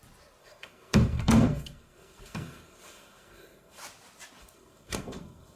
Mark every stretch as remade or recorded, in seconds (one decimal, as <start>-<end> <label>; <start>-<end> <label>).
0.0-0.4 recorded; 0.4-3.8 remade; 3.8-4.4 recorded; 4.4-5.6 remade